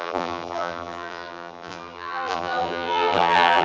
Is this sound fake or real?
fake